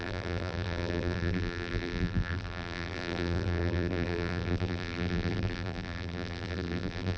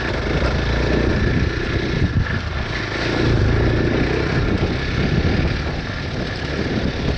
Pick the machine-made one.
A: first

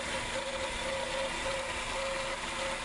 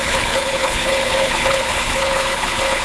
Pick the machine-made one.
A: second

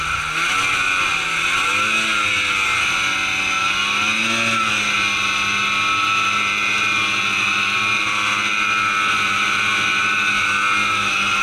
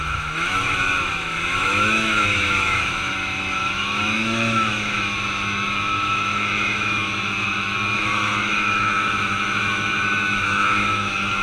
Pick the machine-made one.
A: second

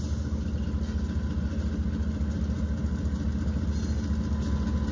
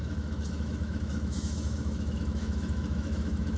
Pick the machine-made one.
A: second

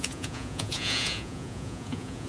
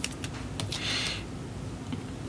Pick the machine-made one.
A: first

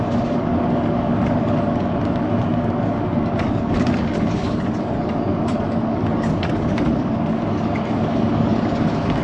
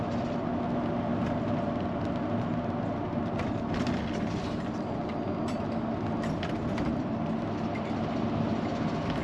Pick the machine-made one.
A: first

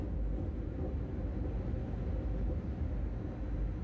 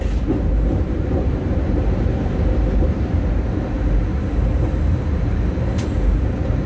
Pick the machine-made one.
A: second